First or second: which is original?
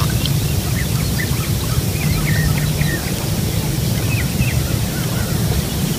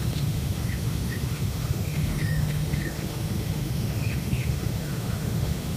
first